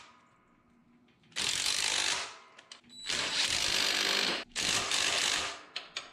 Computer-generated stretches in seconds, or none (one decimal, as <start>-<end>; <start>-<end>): none